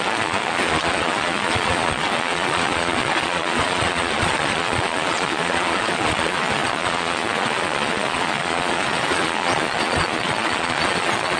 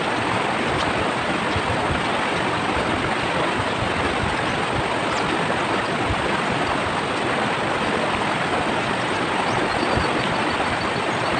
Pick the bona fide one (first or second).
second